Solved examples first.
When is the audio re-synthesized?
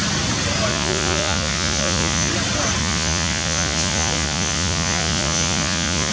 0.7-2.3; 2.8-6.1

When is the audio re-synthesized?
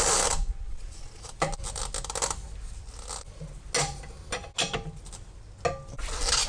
0.7-1.4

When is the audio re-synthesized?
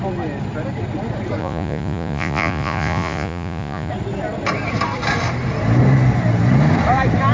1.4-3.9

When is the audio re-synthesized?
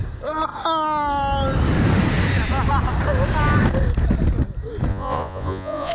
4.9-5.9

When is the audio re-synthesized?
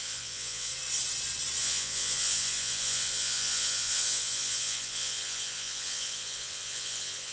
0.0-0.7; 1.6-7.3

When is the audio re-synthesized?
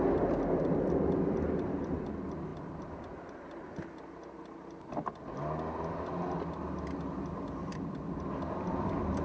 none